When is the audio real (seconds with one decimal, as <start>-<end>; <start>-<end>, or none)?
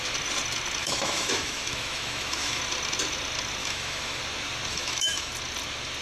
0.0-0.8; 2.6-3.6; 4.2-4.7; 5.3-6.0